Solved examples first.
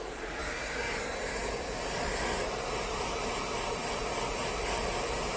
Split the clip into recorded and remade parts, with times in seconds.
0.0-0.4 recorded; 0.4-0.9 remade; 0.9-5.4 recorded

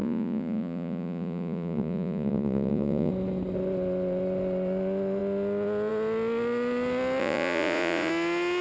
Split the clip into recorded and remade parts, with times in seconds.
0.0-3.1 remade; 3.1-7.2 recorded; 7.2-8.1 remade; 8.1-8.6 recorded

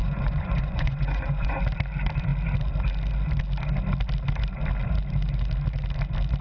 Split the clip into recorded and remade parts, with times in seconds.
0.0-1.6 remade; 1.6-6.4 recorded

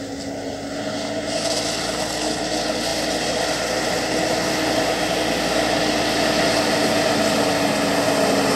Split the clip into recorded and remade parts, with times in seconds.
0.0-8.6 recorded

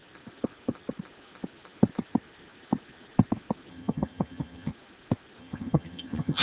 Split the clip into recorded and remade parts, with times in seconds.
0.0-3.7 recorded; 3.7-4.7 remade; 4.7-5.4 recorded; 5.4-6.4 remade

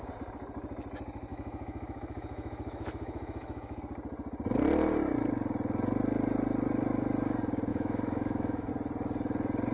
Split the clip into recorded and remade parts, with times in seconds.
0.0-1.3 recorded; 1.3-3.8 remade; 3.8-7.7 recorded; 7.7-8.7 remade; 8.7-9.7 recorded

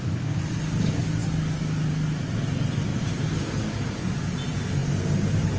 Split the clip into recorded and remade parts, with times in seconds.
0.0-2.9 recorded; 2.9-4.2 remade; 4.2-4.8 recorded; 4.8-5.6 remade

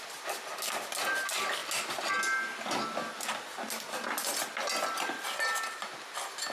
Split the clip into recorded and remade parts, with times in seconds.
0.0-6.5 recorded